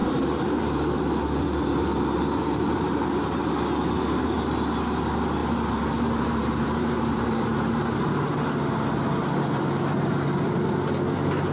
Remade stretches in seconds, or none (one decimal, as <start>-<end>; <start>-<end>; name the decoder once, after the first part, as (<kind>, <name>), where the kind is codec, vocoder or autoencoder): 0.0-1.0 (vocoder, BigVGAN v2); 5.4-8.2